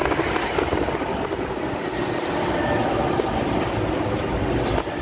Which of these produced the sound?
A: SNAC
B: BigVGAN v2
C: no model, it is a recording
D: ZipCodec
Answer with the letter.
C